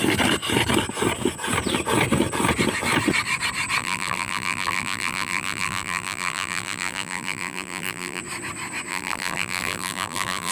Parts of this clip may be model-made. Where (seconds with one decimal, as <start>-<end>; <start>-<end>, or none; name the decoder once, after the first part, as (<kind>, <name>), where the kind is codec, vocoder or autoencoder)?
3.8-8.2 (vocoder, BigVGAN v2); 8.9-10.5